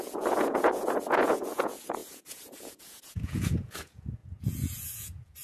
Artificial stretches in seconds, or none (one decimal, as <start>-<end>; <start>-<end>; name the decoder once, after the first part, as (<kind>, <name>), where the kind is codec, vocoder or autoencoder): 0.0-5.4 (vocoder, Vocos)